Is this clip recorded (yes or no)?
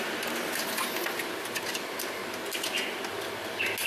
yes